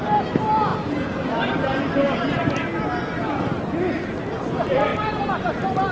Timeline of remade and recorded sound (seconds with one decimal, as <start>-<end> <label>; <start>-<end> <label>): 0.0-5.9 recorded